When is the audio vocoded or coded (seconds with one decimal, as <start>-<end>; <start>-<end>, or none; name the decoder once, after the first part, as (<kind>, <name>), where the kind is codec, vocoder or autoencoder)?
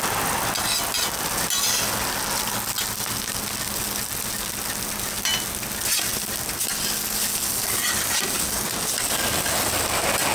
none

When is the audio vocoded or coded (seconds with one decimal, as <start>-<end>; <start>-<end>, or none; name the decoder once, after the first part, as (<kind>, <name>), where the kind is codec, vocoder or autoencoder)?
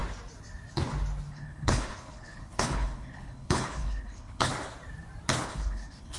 1.3-4.5 (codec, HILCodec); 5.4-6.2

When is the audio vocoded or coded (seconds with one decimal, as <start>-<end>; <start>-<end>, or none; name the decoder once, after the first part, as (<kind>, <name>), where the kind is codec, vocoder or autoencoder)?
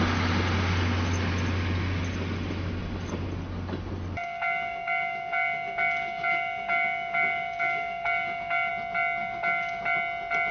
4.2-8.7 (codec, DAC); 9.2-9.8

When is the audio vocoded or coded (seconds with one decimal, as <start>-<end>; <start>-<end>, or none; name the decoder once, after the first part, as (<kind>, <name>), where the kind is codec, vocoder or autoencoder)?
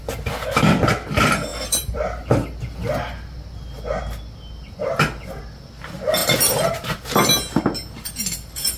1.5-4.0 (vocoder, BigVGAN v2)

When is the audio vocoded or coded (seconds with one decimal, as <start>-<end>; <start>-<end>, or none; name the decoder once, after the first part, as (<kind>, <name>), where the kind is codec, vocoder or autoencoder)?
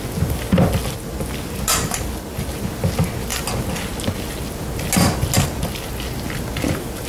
none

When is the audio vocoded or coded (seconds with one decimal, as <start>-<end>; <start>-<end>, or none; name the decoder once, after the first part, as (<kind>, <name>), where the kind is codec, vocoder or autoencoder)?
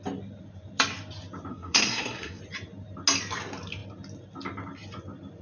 1.5-2.4 (codec, SNAC)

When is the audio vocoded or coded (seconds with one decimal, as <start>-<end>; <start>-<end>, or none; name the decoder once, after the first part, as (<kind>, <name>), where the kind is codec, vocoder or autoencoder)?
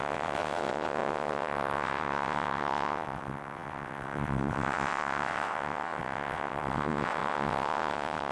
0.0-8.3 (vocoder, WaveNeXt)